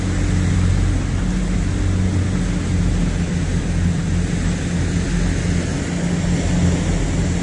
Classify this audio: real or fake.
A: real